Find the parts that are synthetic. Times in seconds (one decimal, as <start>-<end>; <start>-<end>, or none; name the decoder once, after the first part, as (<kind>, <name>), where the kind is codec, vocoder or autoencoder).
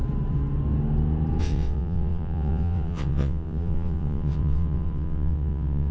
1.4-5.9 (vocoder, WaveNeXt)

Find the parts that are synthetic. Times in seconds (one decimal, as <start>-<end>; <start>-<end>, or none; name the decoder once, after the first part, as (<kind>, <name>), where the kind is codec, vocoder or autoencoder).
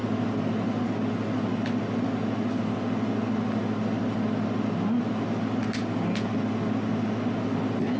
none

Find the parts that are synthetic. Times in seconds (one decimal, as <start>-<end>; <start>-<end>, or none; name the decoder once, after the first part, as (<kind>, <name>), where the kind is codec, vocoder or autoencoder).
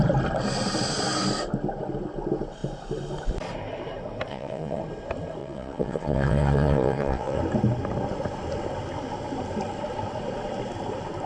4.3-4.8 (vocoder, WaveNeXt); 5.4-7.4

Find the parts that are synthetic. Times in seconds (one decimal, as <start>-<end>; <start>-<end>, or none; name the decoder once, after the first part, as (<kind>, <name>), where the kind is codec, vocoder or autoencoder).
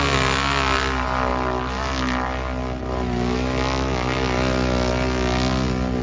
none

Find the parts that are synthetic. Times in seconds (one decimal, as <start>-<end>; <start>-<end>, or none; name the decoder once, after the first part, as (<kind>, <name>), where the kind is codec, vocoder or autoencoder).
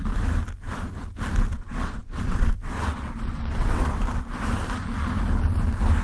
1.5-2.5 (vocoder, WaveNeXt); 2.9-4.0